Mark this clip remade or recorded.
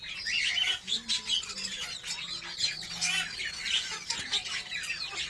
recorded